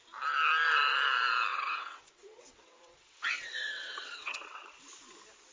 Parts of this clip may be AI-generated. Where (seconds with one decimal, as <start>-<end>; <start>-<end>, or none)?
1.5-4.8

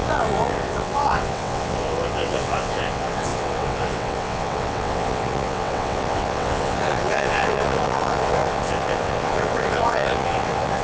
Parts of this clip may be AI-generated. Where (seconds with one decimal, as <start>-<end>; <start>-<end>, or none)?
0.0-10.8

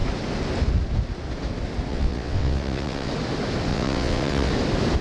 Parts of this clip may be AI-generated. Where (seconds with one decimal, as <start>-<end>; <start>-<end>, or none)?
1.9-3.1; 3.7-4.5